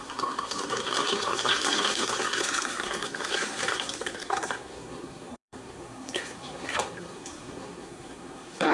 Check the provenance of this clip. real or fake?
fake